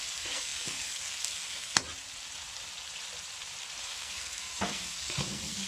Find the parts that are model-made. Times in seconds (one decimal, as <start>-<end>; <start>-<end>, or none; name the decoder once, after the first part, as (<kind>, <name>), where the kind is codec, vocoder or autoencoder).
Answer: 0.0-1.8 (codec, SNAC); 3.8-5.7